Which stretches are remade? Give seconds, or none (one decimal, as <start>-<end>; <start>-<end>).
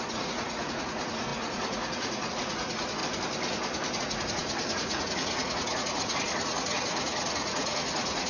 0.0-3.0; 4.0-8.3